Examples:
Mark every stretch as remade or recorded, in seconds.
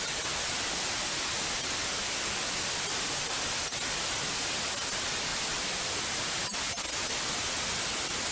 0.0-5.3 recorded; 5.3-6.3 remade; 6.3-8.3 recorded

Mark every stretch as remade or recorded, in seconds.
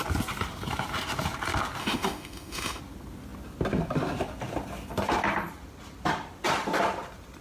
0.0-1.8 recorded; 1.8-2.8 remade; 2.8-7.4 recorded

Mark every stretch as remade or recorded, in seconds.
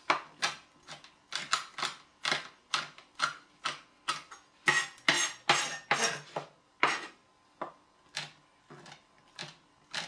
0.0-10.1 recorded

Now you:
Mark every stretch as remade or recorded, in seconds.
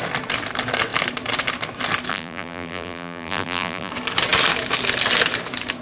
0.0-2.1 recorded; 2.1-3.9 remade; 3.9-5.8 recorded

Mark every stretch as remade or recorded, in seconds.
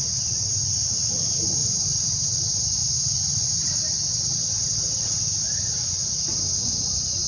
0.0-1.6 recorded; 1.6-2.3 remade; 2.3-2.8 recorded; 2.8-4.8 remade; 4.8-5.3 recorded; 5.3-6.0 remade; 6.0-7.3 recorded